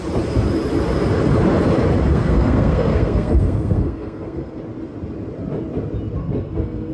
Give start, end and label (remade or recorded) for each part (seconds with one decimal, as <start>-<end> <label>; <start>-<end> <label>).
0.0-2.1 recorded; 2.1-4.6 remade; 4.6-6.2 recorded; 6.2-6.9 remade